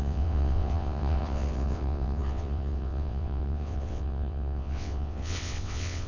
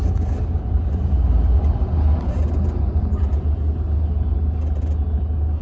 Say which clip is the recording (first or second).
second